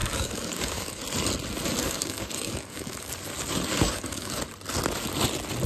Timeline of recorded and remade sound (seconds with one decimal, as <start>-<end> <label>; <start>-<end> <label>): 0.0-1.0 remade; 1.0-1.8 recorded; 1.8-3.1 remade; 3.1-3.7 recorded; 3.7-4.4 remade; 4.4-5.7 recorded